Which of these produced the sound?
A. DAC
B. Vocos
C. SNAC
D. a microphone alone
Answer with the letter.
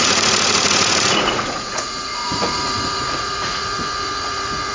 B